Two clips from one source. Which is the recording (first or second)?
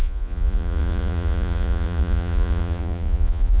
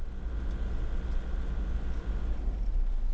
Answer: second